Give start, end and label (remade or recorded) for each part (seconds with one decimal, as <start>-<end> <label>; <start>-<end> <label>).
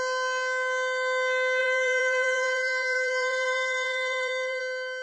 0.0-1.6 recorded; 1.6-4.6 remade; 4.6-5.0 recorded